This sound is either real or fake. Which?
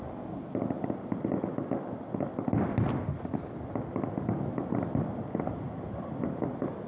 real